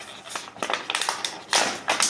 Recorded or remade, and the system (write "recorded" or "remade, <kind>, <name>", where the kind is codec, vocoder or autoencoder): recorded